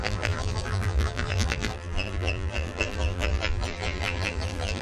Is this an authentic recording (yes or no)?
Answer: no